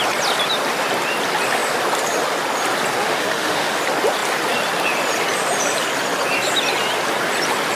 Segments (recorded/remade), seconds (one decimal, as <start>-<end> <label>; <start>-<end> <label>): 0.0-3.0 recorded; 3.0-3.8 remade; 3.8-7.8 recorded